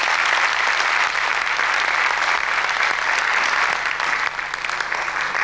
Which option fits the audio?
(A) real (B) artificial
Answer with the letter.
A